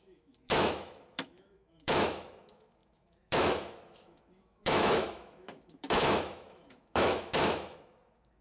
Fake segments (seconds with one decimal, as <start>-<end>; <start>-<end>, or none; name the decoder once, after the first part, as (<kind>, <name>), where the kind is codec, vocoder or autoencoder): 0.0-8.4 (autoencoder, DAC-VAE)